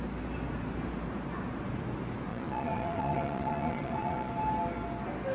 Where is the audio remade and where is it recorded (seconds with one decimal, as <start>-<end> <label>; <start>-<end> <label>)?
0.0-2.3 recorded; 2.3-4.3 remade; 4.3-5.3 recorded